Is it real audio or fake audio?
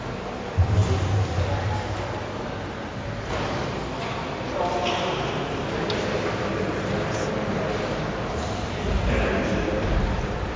real